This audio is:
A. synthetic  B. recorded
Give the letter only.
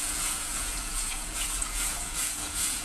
A